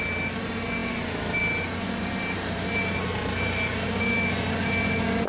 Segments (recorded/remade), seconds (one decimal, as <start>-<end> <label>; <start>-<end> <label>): 0.0-5.3 recorded